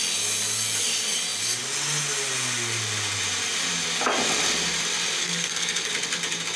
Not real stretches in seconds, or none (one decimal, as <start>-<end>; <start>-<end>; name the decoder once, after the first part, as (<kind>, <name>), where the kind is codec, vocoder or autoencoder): 5.2-5.9 (codec, SNAC)